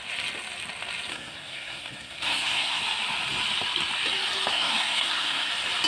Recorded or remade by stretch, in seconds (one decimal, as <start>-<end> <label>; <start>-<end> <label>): 0.0-1.1 recorded; 1.1-2.8 remade; 2.8-4.5 recorded; 4.5-5.5 remade; 5.5-5.9 recorded